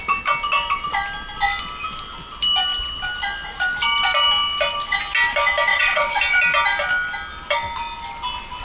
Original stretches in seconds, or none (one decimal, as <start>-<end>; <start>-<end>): 0.0-5.7; 6.2-8.6